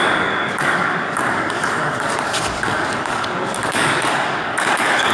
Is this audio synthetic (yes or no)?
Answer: yes